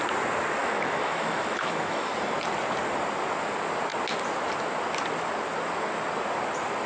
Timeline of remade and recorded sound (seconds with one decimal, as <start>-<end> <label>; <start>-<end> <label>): 0.0-0.6 recorded; 0.6-2.1 remade; 2.1-6.9 recorded